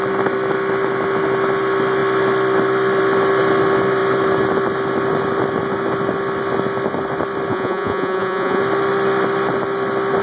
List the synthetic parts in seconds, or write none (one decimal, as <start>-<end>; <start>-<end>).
7.5-8.6